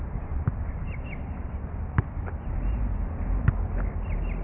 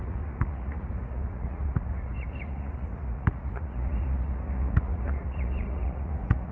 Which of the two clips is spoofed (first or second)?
second